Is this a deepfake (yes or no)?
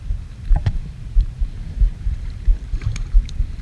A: yes